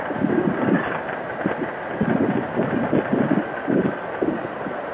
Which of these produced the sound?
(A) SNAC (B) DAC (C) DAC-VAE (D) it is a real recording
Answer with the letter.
D